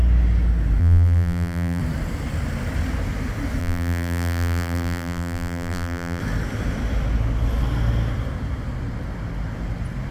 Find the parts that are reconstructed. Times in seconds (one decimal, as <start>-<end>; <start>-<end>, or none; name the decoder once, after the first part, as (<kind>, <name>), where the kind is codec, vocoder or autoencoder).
0.8-1.8 (vocoder, BigVGAN v2); 3.6-6.2